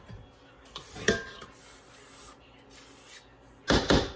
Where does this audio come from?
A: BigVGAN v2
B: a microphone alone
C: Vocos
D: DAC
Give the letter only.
B